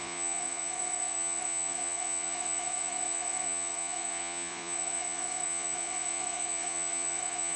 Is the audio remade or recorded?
remade